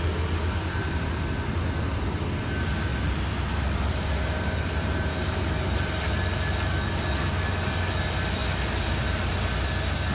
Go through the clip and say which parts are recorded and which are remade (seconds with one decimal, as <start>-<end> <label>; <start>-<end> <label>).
0.0-2.9 recorded; 2.9-6.1 remade; 6.1-10.1 recorded